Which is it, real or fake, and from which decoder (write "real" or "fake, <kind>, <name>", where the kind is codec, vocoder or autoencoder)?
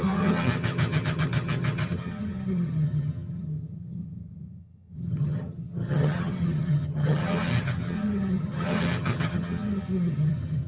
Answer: fake, vocoder, HiFi-GAN